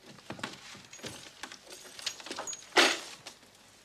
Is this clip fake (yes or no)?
no